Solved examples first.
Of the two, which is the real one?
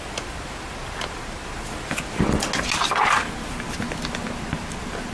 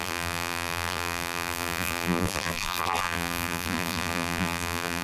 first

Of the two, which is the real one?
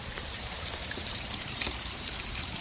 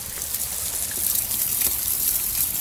second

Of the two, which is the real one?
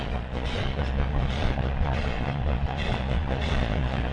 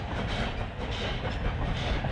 second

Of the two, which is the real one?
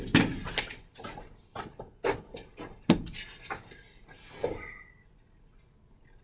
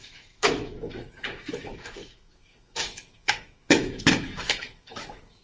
first